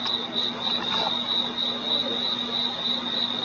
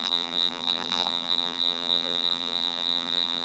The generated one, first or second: second